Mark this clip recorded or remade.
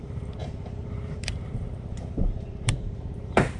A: remade